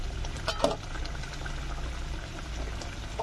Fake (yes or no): no